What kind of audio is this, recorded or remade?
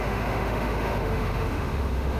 remade